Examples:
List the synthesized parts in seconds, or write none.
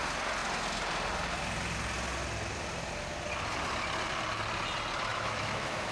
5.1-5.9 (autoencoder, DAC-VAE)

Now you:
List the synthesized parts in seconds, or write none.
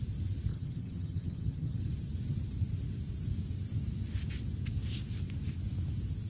0.5-1.8 (vocoder, HiFi-GAN)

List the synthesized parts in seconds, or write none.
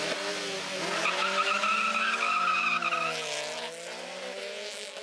none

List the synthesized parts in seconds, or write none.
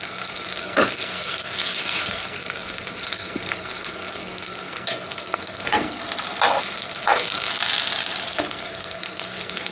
0.0-6.0 (codec, SNAC); 6.6-7.5; 8.3-9.7